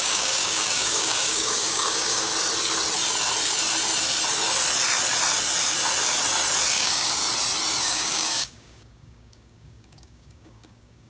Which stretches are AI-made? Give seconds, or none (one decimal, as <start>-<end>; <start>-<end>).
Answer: 0.0-2.3; 6.7-7.2; 7.8-11.1